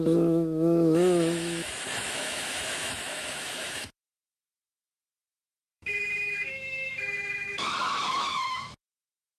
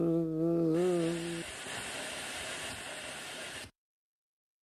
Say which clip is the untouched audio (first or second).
second